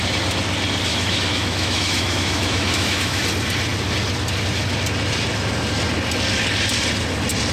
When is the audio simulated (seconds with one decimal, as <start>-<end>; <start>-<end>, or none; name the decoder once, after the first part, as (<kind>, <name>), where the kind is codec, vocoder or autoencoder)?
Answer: 0.9-3.2 (autoencoder, DAC-VAE)